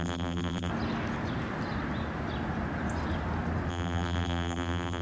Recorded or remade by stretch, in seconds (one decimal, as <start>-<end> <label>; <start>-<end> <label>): 0.0-0.7 remade; 0.7-3.7 recorded; 3.7-5.0 remade